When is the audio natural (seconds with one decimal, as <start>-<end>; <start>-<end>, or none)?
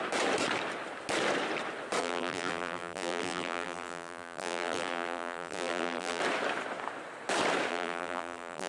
0.0-2.0; 6.2-7.7